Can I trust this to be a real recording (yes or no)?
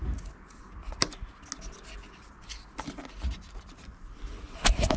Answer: yes